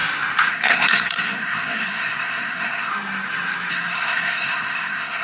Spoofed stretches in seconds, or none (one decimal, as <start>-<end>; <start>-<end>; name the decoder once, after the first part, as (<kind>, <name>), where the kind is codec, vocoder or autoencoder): 0.5-2.9 (codec, SNAC); 3.7-5.2